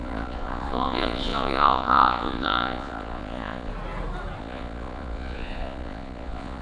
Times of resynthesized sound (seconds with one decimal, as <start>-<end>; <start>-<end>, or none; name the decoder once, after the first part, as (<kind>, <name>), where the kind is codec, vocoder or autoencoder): 0.0-3.7 (vocoder, Vocos); 4.4-6.6